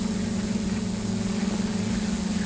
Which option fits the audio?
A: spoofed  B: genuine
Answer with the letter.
B